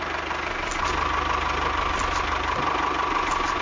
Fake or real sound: real